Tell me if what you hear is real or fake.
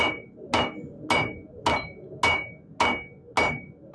real